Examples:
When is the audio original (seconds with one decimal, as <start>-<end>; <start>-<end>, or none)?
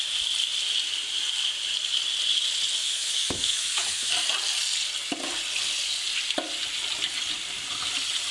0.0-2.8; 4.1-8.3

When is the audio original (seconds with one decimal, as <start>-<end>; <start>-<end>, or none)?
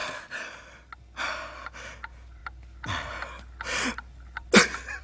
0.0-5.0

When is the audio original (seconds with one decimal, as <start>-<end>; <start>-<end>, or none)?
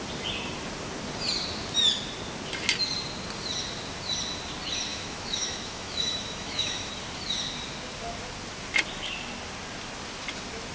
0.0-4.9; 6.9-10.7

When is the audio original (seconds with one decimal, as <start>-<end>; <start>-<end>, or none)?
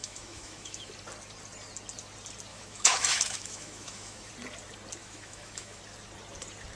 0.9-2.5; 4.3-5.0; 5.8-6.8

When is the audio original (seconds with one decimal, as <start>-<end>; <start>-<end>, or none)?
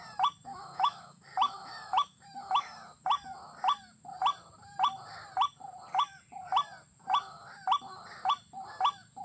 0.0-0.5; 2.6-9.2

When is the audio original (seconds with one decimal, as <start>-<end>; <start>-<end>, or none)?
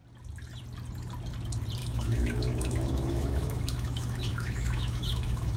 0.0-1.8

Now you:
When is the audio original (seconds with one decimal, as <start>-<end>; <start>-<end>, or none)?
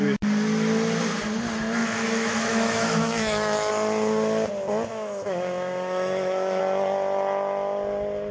0.0-1.8; 3.7-4.9; 6.6-8.3